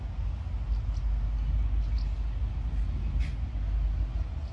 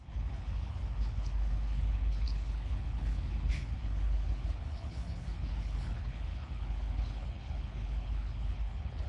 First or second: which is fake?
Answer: second